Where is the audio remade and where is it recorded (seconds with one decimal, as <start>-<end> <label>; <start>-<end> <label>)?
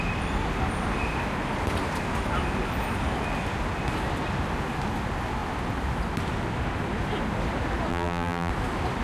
0.0-7.9 recorded; 7.9-8.5 remade; 8.5-9.0 recorded